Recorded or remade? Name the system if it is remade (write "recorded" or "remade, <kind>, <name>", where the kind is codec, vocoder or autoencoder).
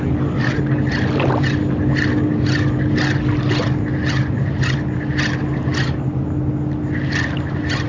recorded